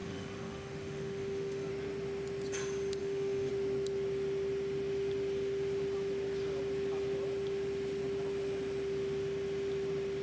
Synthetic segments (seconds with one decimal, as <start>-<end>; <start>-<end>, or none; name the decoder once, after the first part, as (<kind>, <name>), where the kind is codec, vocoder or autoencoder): 0.0-1.7 (autoencoder, DAC-VAE); 3.0-3.5